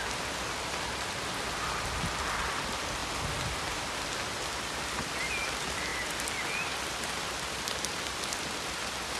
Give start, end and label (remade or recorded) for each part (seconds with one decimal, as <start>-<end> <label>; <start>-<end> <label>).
0.0-9.2 recorded